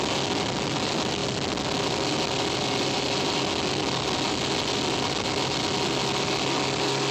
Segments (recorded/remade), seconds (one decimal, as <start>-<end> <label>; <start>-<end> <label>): 0.0-7.1 recorded